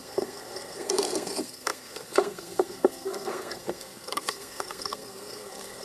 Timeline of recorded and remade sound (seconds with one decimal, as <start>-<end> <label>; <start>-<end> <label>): 0.0-5.8 remade